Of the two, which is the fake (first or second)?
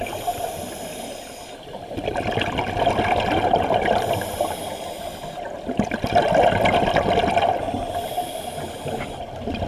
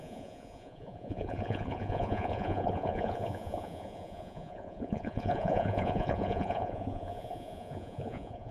second